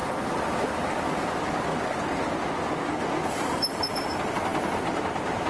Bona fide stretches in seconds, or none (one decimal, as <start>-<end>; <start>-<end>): 0.0-3.3